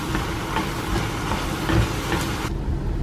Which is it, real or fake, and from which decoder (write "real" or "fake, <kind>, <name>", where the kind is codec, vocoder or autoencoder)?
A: real